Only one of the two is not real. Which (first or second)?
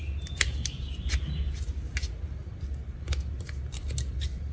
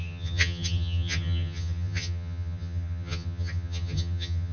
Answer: second